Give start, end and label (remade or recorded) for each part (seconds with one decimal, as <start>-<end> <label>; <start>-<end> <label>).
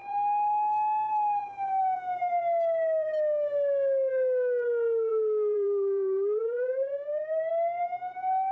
0.0-5.1 recorded; 5.1-7.5 remade; 7.5-8.5 recorded